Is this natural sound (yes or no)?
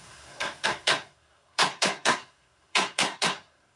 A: no